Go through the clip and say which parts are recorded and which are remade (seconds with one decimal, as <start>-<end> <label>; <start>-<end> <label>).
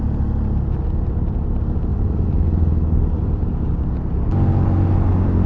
0.0-5.5 recorded